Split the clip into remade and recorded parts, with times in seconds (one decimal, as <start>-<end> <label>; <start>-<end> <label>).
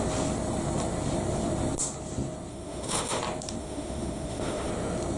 0.0-2.5 recorded; 2.5-3.2 remade; 3.2-3.6 recorded; 3.6-4.7 remade; 4.7-5.2 recorded